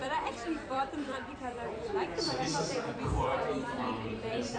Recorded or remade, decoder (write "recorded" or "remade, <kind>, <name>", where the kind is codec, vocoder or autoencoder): remade, vocoder, BigVGAN v2